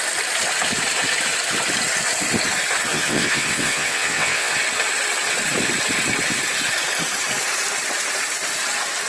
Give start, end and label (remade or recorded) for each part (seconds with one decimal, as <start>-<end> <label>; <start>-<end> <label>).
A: 0.0-2.9 recorded; 2.9-4.5 remade; 4.5-9.1 recorded